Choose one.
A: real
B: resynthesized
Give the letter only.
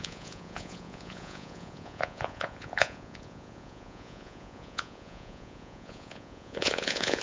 B